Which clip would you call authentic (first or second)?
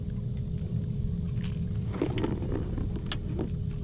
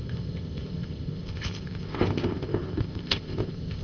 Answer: first